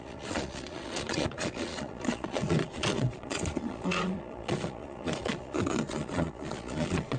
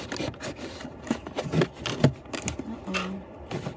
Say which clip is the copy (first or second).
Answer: first